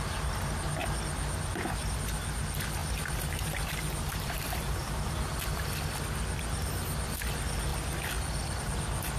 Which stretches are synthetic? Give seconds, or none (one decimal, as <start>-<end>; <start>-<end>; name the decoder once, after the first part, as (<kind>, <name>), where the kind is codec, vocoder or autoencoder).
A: 2.8-5.7 (vocoder, BigVGAN v2)